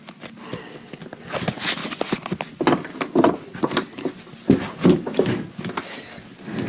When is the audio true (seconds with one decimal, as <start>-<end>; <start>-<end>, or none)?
0.0-6.7